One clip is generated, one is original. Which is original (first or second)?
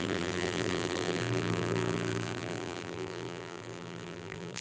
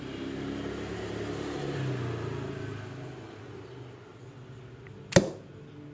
second